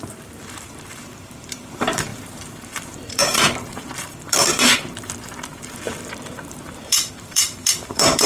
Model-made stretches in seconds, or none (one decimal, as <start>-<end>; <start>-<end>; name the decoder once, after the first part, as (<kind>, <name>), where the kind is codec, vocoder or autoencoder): 0.0-8.3 (vocoder, BigVGAN v2)